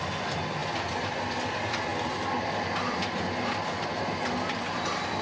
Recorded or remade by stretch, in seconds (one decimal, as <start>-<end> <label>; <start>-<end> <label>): 0.0-5.2 recorded